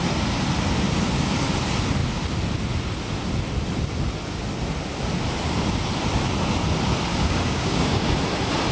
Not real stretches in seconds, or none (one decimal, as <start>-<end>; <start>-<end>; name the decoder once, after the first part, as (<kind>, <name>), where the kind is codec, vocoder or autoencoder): 7.1-8.1 (codec, DAC)